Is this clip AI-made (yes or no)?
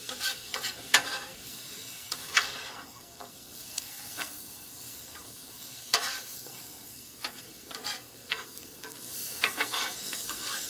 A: yes